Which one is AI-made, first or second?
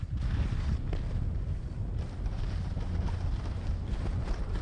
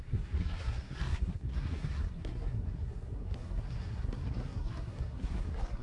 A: second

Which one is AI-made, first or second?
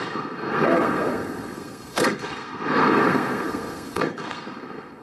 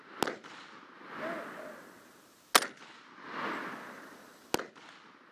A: first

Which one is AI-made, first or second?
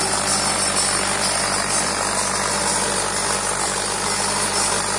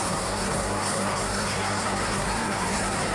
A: second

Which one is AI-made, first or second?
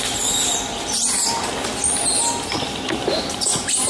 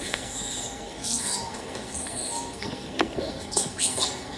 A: second